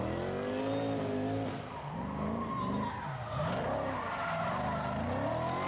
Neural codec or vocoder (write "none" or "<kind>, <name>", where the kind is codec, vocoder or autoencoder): none